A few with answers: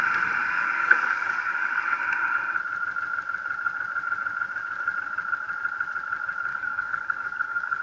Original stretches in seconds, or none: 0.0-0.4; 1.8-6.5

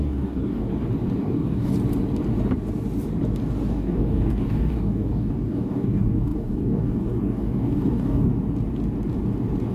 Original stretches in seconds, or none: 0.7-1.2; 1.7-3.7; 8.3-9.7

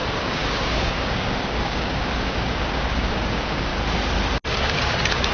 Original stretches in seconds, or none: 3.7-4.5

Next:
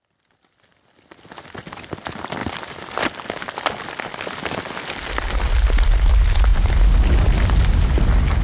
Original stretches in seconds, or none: 0.0-8.4

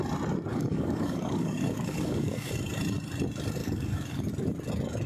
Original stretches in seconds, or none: 0.0-0.5; 2.5-3.6; 4.3-5.1

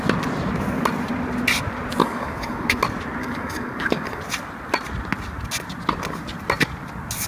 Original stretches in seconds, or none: 0.0-2.0; 2.8-3.2; 4.2-7.3